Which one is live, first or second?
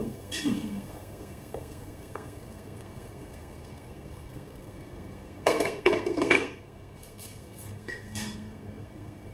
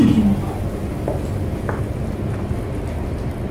second